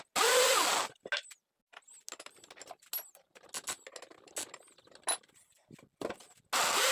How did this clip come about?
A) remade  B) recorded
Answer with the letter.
B